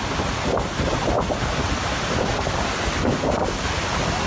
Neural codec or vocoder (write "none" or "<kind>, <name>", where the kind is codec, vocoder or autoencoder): none